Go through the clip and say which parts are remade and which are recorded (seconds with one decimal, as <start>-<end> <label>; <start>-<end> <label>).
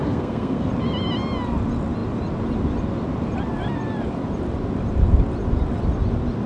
0.0-0.7 remade; 0.7-6.5 recorded